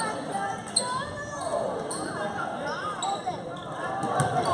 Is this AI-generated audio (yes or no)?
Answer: no